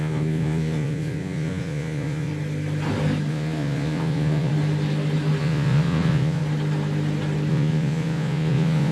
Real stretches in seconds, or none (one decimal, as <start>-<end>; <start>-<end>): 2.3-3.3; 4.5-5.4; 6.4-7.5